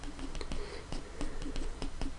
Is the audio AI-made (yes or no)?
no